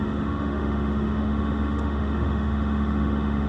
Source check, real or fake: fake